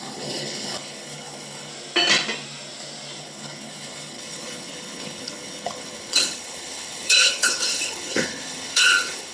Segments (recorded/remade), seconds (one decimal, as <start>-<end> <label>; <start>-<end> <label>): 0.0-1.7 remade; 1.7-3.2 recorded; 3.2-9.3 remade